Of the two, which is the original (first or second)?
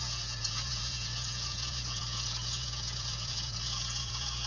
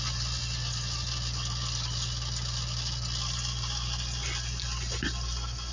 second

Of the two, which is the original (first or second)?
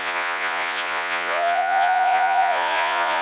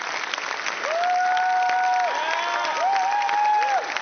second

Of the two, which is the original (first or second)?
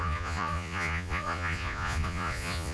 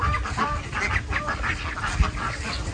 second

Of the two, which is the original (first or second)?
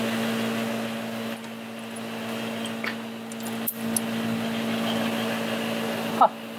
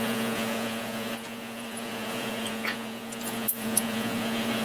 first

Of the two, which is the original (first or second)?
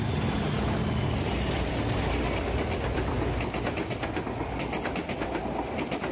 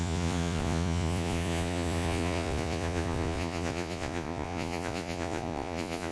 first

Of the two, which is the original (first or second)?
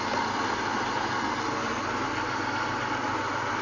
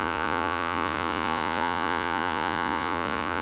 first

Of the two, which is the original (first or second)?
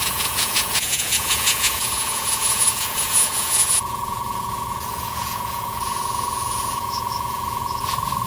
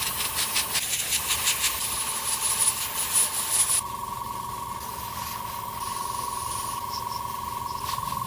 second